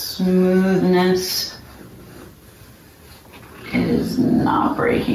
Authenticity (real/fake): real